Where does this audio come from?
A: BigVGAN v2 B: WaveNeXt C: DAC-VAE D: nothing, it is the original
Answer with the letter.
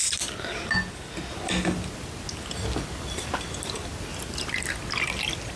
D